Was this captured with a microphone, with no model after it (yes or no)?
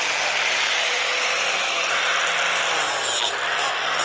yes